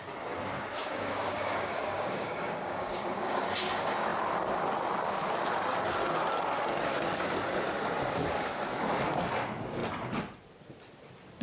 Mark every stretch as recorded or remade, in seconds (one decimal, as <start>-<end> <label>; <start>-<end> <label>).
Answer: 0.0-0.8 recorded; 0.8-3.4 remade; 3.4-11.4 recorded